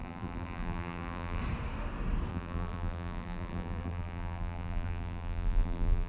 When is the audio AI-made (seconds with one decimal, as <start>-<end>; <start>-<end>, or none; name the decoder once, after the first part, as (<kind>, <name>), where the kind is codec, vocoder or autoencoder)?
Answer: 0.0-1.4 (vocoder, BigVGAN v2); 2.3-6.1